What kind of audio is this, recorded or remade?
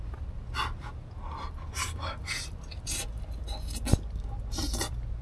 recorded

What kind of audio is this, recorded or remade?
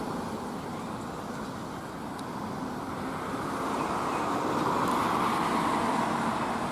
recorded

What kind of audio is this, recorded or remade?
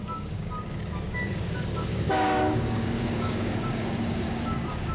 remade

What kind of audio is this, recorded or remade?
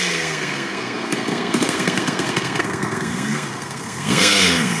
remade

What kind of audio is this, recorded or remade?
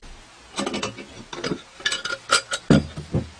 recorded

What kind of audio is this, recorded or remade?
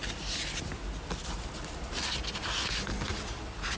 recorded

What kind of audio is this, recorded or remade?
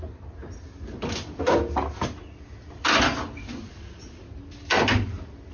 recorded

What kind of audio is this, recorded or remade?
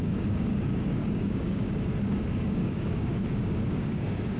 remade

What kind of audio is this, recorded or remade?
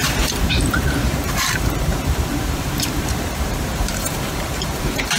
remade